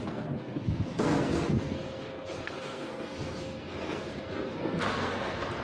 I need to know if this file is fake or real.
fake